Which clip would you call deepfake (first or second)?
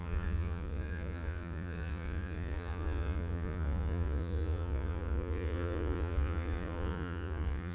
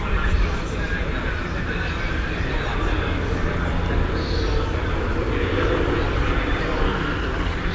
first